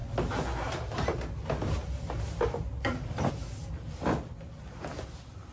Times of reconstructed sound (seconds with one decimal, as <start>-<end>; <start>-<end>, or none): none